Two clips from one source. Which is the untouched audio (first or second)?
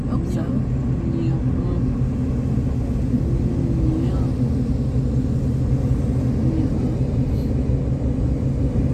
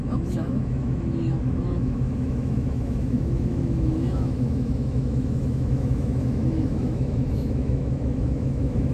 first